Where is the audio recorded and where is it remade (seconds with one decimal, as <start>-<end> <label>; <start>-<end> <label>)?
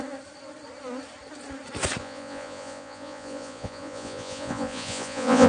0.0-2.0 recorded; 2.0-5.5 remade